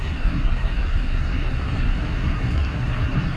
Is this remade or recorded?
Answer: remade